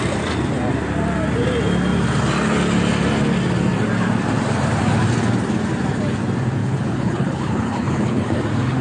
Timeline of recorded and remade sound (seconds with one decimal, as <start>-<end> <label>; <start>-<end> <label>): 0.0-6.6 recorded; 6.6-8.4 remade; 8.4-8.8 recorded